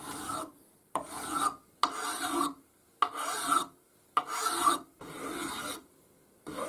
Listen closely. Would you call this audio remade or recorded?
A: remade